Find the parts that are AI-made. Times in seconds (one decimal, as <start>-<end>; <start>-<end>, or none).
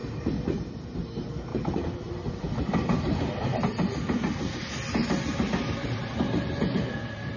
1.5-2.3; 5.0-6.0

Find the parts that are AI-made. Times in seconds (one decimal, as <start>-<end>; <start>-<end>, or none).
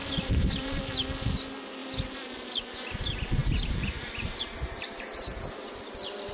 0.0-0.8; 3.4-5.7